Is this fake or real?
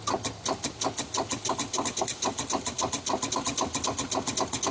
real